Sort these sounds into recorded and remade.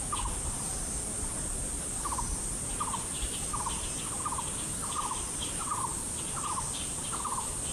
recorded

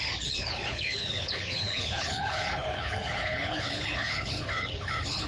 remade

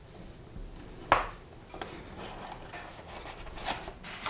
recorded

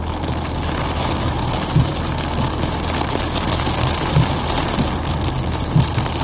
recorded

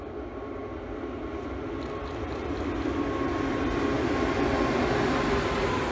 recorded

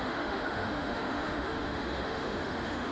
remade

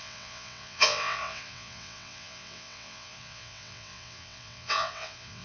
remade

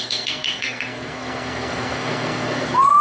remade